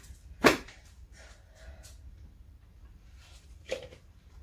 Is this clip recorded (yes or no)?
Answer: no